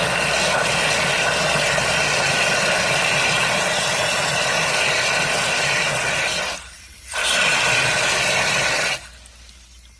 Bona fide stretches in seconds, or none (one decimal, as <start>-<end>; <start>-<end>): 0.0-10.0